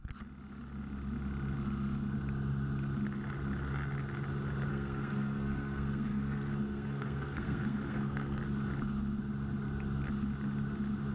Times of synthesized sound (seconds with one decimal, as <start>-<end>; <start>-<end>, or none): 4.7-8.4